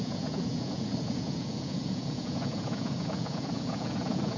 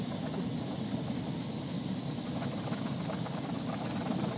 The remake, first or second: first